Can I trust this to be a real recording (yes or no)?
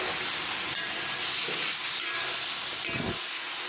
yes